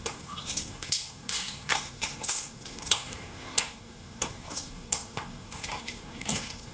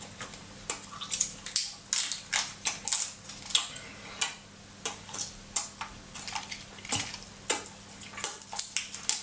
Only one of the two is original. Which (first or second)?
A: second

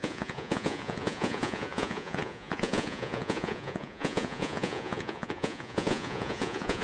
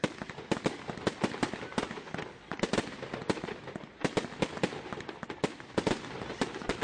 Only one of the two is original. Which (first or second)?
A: second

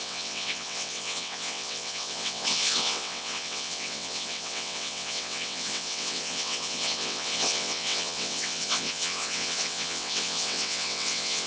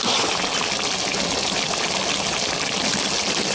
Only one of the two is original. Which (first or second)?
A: second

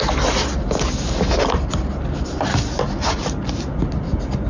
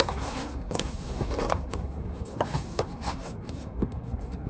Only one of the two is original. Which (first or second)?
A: first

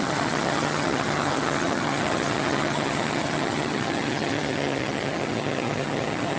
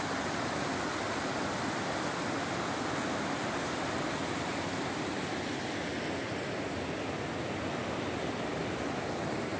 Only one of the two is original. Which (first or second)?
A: second